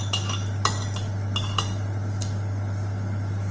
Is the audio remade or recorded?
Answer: recorded